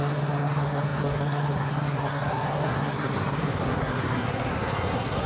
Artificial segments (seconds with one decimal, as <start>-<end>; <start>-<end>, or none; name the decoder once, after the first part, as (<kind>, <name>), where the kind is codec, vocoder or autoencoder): 0.0-5.3 (codec, SNAC)